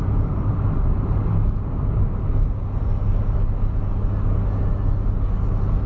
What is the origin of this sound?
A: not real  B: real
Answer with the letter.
B